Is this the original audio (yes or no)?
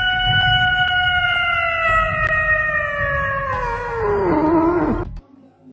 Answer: yes